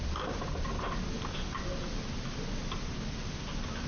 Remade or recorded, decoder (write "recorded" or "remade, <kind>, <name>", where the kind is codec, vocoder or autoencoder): recorded